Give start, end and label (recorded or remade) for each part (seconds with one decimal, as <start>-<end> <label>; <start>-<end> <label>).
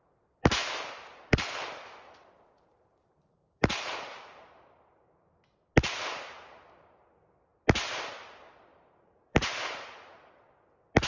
0.0-2.7 recorded; 2.7-4.9 remade; 4.9-8.7 recorded; 8.7-10.3 remade; 10.3-11.1 recorded